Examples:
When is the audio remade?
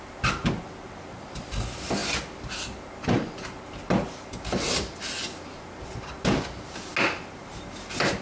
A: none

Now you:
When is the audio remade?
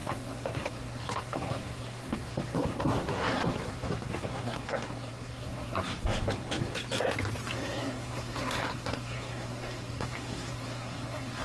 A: 0.0-6.8 (codec, SNAC); 7.5-11.4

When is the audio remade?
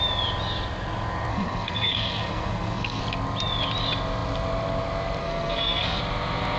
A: 1.3-3.0 (codec, SNAC); 5.2-6.0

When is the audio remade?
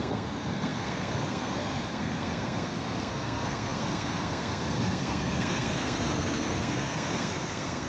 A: 0.0-7.9 (codec, SNAC)